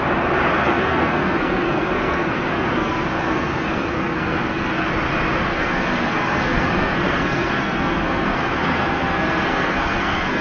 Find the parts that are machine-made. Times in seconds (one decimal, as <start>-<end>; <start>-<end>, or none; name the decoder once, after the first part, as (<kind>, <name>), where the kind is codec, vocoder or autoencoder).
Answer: 0.5-4.9 (codec, SNAC); 5.4-10.4